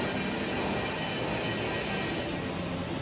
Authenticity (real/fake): real